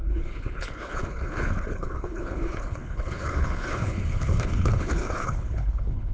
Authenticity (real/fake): fake